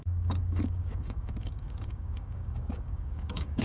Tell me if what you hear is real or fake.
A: fake